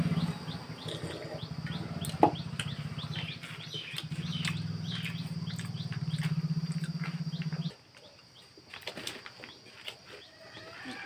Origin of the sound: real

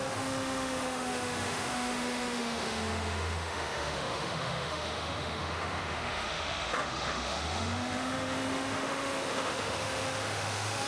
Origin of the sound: fake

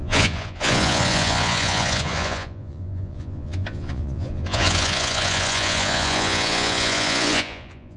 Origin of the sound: fake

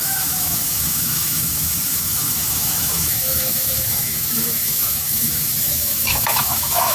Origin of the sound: fake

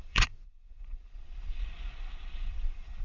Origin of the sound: fake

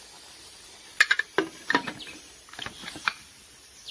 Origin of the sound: fake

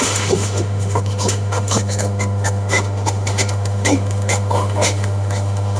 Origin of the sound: fake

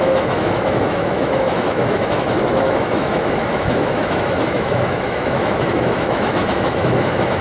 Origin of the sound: fake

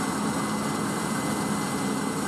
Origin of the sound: real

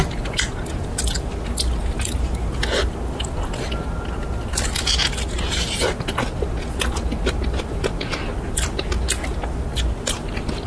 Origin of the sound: real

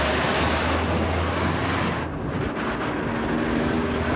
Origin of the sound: real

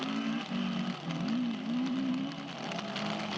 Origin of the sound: real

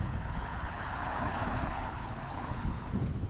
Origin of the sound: fake